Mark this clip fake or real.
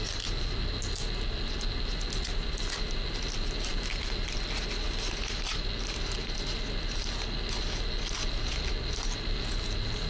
real